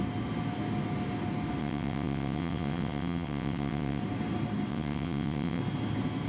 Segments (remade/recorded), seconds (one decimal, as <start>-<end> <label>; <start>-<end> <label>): 0.0-1.6 recorded; 1.6-4.0 remade; 4.0-4.7 recorded; 4.7-5.6 remade; 5.6-6.3 recorded

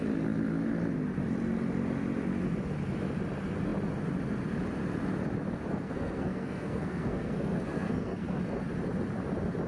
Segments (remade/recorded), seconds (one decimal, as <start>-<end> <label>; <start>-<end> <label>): 0.0-5.7 recorded; 5.7-8.4 remade; 8.4-9.7 recorded